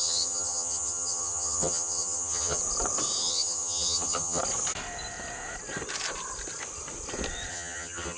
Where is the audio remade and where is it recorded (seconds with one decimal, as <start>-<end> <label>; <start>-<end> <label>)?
0.0-2.6 remade; 2.6-3.2 recorded; 3.2-4.4 remade; 4.4-7.5 recorded; 7.5-8.2 remade